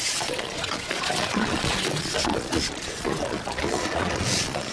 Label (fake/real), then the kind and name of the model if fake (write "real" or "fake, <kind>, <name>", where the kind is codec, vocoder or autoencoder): fake, vocoder, Vocos